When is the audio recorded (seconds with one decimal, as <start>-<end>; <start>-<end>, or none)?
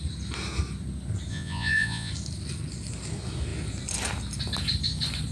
0.0-1.3; 2.1-5.3